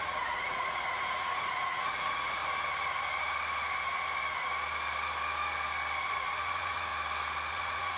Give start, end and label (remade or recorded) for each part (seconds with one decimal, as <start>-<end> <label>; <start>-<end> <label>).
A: 0.0-2.4 remade; 2.4-6.1 recorded; 6.1-6.9 remade; 6.9-7.5 recorded; 7.5-8.0 remade